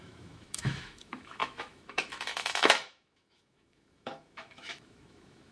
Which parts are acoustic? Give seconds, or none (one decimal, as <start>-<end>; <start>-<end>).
none